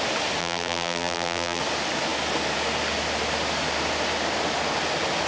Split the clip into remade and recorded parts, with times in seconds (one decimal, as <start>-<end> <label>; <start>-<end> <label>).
0.0-0.4 recorded; 0.4-1.6 remade; 1.6-5.3 recorded